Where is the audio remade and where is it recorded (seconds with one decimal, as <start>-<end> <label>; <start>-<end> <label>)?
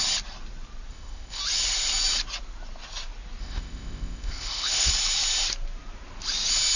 0.0-0.9 recorded; 0.9-1.4 remade; 1.4-3.4 recorded; 3.4-4.9 remade; 4.9-6.8 recorded